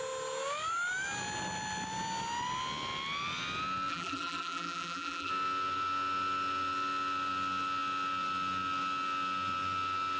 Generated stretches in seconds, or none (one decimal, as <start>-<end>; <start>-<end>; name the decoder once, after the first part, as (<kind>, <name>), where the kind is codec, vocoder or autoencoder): 3.9-5.3 (vocoder, BigVGAN v2)